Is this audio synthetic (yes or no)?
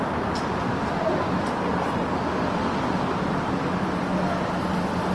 no